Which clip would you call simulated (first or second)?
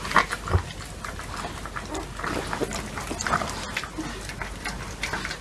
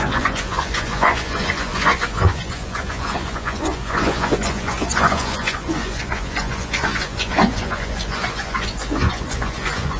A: second